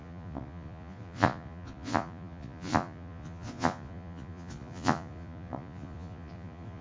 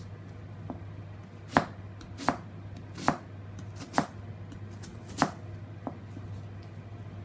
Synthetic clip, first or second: first